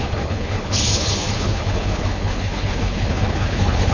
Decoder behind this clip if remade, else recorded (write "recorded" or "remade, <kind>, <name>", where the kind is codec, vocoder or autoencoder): remade, codec, HILCodec